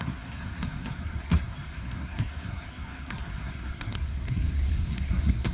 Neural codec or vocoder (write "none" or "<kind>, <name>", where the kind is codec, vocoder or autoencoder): codec, SNAC